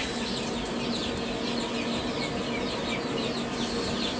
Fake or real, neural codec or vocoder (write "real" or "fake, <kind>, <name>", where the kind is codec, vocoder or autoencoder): real